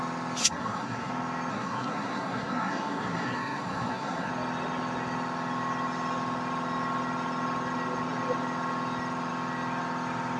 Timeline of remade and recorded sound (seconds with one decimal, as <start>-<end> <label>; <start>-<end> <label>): 0.0-0.4 recorded; 0.4-1.1 remade; 1.1-1.5 recorded; 1.5-4.3 remade; 4.3-10.4 recorded